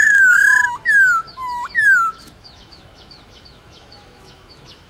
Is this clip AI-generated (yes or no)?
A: yes